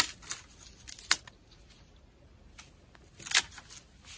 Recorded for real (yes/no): yes